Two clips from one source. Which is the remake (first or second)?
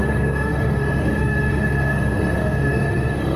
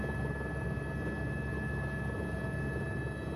first